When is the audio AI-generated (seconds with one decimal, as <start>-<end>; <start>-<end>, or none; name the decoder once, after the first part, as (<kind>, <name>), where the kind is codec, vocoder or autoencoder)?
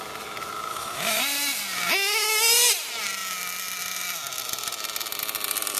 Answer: 0.7-1.2 (autoencoder, DAC-VAE)